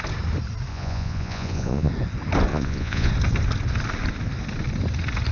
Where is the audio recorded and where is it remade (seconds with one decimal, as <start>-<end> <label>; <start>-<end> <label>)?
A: 0.0-0.7 recorded; 0.7-1.9 remade; 1.9-2.5 recorded; 2.5-3.1 remade; 3.1-5.3 recorded